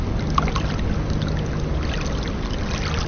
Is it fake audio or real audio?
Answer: real